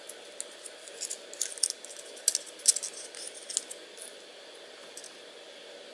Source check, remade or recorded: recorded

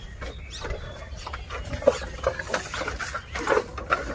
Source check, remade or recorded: recorded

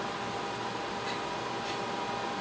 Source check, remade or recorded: recorded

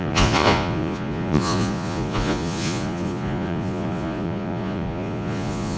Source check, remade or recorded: remade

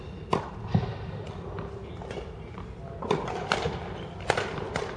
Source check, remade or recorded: recorded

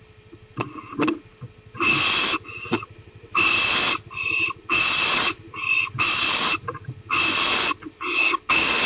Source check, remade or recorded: remade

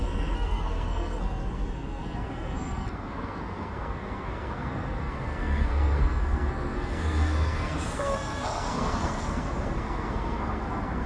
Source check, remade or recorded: remade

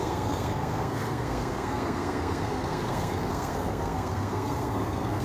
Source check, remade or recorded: remade